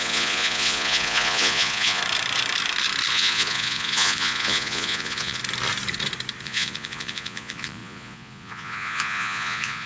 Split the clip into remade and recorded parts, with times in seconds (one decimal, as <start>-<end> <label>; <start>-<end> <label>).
0.0-2.0 remade; 2.0-3.1 recorded; 3.1-5.4 remade; 5.4-6.4 recorded; 6.4-9.9 remade